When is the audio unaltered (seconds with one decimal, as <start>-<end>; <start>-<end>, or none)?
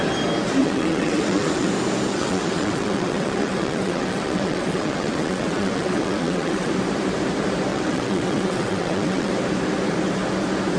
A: 0.0-0.6; 1.7-2.1; 6.7-7.7; 9.3-10.8